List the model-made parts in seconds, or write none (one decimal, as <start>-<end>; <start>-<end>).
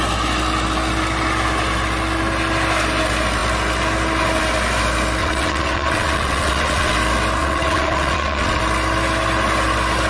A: 5.2-6.9; 7.4-8.6